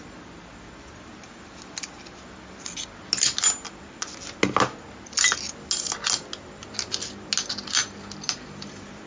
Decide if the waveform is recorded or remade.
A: recorded